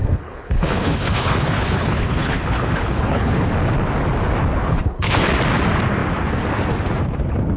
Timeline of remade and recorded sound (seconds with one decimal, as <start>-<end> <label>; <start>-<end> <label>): 0.0-3.5 remade; 3.5-4.7 recorded; 4.7-5.3 remade; 5.3-7.6 recorded